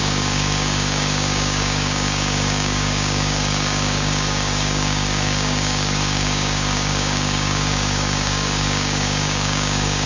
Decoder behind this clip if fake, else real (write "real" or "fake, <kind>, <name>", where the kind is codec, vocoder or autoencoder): fake, codec, DAC